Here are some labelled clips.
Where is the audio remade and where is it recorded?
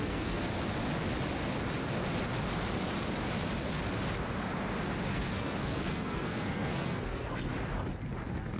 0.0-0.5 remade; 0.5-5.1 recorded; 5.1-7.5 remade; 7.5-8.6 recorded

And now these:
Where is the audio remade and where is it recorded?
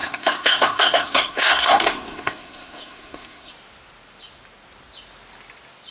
0.0-3.5 remade; 3.5-5.9 recorded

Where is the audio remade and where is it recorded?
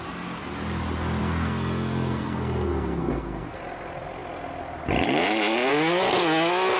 0.0-1.2 recorded; 1.2-3.6 remade; 3.6-6.8 recorded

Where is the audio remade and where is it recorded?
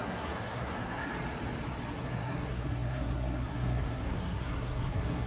0.0-1.1 remade; 1.1-1.9 recorded; 1.9-5.3 remade